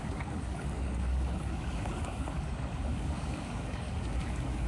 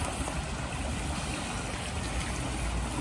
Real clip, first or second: second